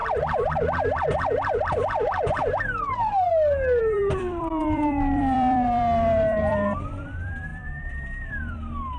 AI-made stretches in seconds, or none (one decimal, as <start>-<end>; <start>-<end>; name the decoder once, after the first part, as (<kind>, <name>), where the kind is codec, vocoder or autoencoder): 3.8-9.0 (vocoder, BigVGAN v2)